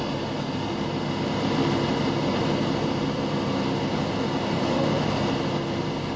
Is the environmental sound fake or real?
real